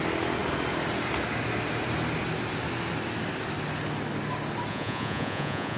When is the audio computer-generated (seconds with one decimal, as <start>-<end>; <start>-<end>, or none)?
4.7-5.8

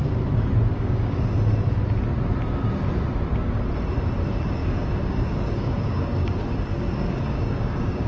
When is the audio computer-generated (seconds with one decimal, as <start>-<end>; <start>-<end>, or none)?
0.7-1.3; 4.6-8.1

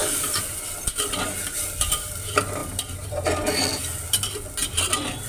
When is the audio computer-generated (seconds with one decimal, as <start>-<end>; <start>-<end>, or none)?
0.0-0.6; 2.6-3.8